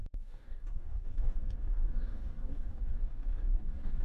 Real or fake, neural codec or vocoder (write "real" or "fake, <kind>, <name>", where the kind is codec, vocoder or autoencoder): fake, codec, DAC